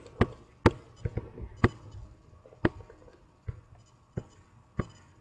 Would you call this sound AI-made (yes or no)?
no